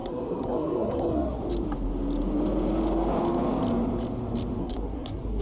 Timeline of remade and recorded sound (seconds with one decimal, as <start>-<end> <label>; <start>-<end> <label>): 0.0-1.4 remade; 1.4-4.6 recorded; 4.6-5.4 remade